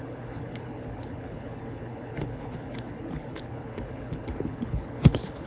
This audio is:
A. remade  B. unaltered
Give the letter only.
A